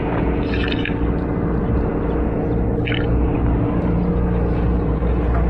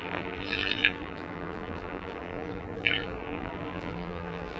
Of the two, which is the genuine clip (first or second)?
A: first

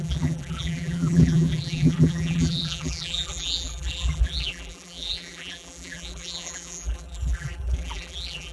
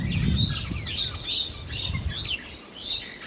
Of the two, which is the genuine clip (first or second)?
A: second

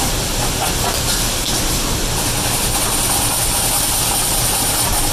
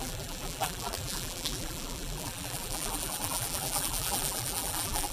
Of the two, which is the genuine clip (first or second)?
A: first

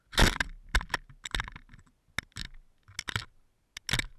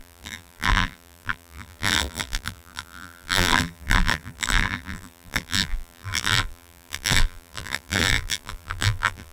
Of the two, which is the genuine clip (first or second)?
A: first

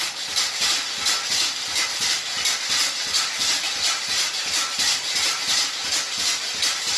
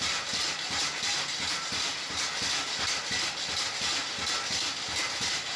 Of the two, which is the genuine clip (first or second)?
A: second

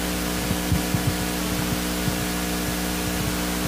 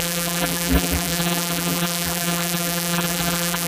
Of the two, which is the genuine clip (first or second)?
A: first